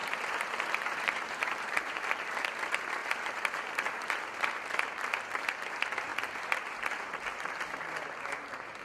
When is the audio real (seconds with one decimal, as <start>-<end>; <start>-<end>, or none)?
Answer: 2.5-3.0; 4.0-8.8